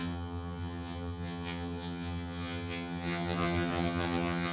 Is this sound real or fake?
fake